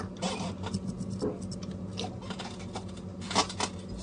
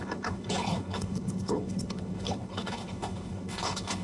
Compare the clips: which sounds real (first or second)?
first